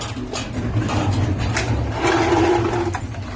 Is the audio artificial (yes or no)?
no